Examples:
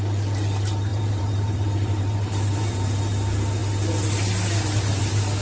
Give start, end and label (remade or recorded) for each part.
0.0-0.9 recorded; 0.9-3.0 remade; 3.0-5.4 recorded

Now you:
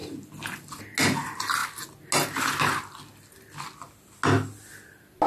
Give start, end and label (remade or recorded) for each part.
0.0-5.3 recorded